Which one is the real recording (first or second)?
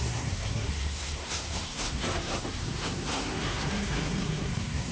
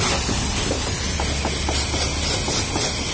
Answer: second